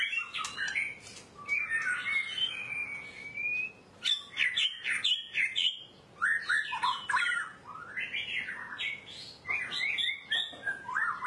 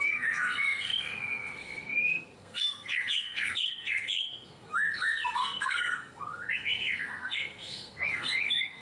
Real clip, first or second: first